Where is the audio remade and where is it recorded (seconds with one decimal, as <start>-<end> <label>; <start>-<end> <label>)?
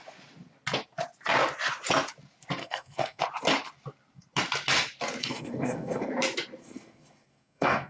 0.0-2.6 recorded; 2.6-3.2 remade; 3.2-5.2 recorded; 5.2-6.1 remade; 6.1-6.6 recorded; 6.6-7.9 remade